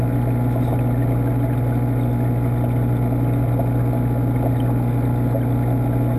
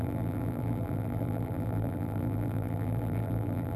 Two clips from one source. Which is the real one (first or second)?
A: first